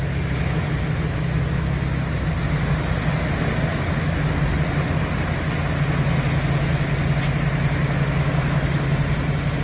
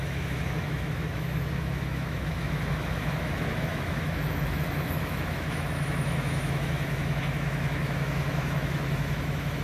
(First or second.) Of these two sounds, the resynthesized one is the second